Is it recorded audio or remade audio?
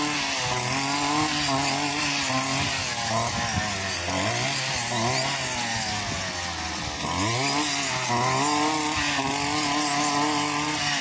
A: recorded